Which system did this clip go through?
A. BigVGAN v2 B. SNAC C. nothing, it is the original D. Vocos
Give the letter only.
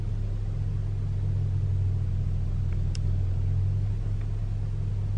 C